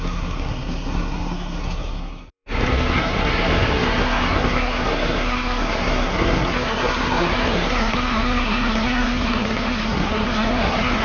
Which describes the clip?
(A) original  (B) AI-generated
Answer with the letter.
B